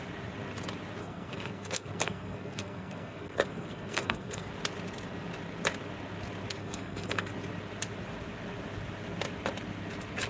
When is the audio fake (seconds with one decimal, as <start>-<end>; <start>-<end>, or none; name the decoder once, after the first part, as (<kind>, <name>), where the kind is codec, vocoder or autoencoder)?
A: 1.0-4.5 (codec, SNAC); 6.6-7.3